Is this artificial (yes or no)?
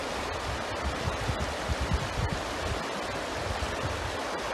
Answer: no